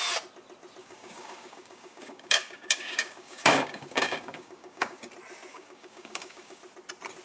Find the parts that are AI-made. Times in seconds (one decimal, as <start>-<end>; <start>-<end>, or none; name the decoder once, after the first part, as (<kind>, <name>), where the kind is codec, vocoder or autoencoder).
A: 0.8-5.1 (codec, DAC); 5.5-6.6